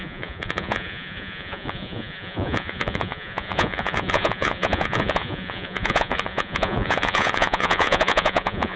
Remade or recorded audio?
remade